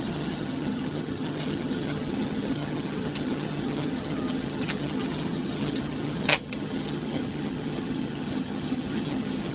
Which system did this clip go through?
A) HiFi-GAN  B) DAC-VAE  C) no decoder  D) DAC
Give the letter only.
A